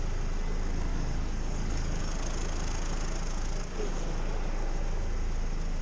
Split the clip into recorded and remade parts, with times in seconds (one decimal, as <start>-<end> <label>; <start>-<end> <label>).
0.0-0.9 recorded; 0.9-2.0 remade; 2.0-5.8 recorded